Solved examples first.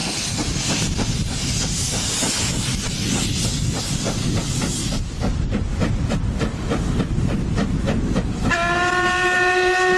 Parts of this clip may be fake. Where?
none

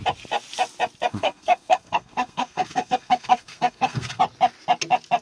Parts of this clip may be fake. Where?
1.1-4.2 (codec, SNAC)

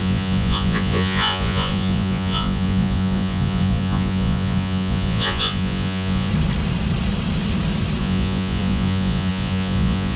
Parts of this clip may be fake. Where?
0.0-6.3 (vocoder, Vocos); 8.0-10.2

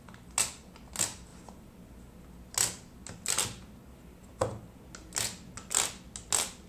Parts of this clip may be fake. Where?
none

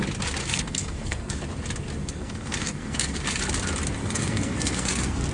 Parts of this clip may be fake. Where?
0.4-1.4 (codec, SNAC); 2.0-3.2; 4.0-5.3

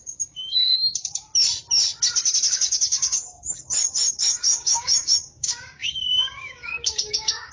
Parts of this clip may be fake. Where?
0.0-1.3 (codec, DAC); 2.5-7.5

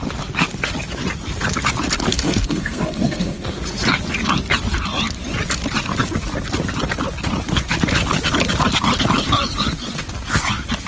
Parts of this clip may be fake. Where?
2.1-3.6 (codec, SNAC)